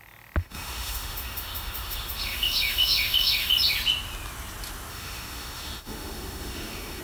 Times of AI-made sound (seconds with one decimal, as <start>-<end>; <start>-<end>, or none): 0.4-3.5; 4.9-7.0